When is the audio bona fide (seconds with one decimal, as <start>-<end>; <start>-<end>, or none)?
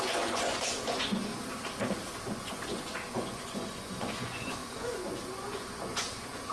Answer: 1.3-2.3